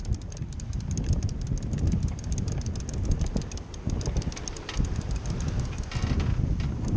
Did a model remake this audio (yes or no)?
no